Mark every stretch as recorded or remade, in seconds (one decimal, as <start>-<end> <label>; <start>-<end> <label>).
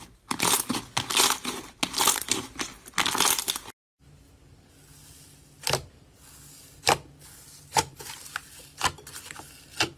0.0-7.7 recorded; 7.7-8.3 remade; 8.3-10.0 recorded